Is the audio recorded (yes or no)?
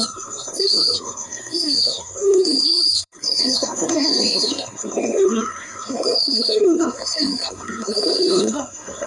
no